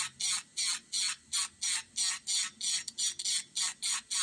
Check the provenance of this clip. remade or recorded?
recorded